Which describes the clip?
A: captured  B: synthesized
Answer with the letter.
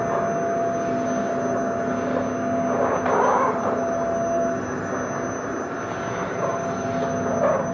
A